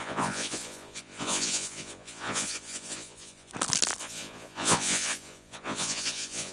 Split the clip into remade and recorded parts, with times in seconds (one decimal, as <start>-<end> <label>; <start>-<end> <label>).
0.0-3.5 remade; 3.5-4.0 recorded; 4.0-6.5 remade